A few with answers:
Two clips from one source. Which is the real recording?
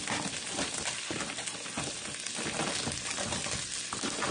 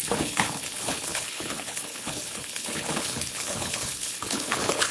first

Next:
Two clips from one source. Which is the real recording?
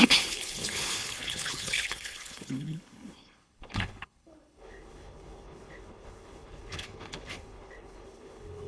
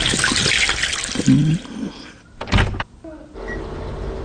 second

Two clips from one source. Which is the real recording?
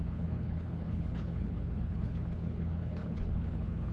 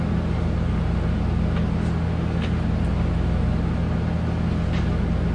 second